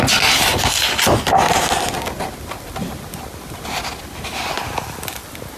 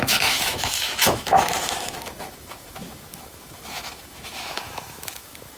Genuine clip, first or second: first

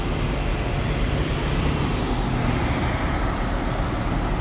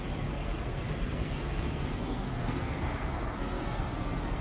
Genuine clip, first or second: first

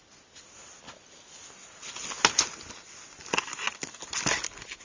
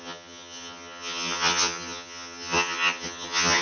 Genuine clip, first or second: first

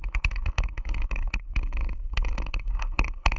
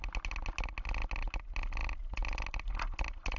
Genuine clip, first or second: second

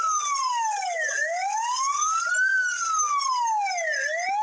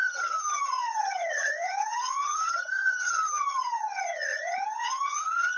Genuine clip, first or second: first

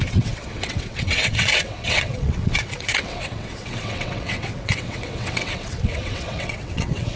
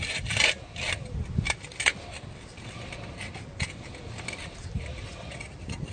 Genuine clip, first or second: second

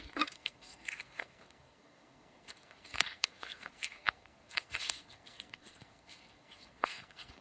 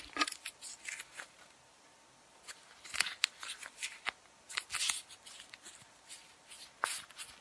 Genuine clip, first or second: second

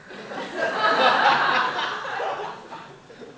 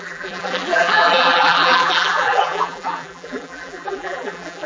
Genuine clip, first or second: first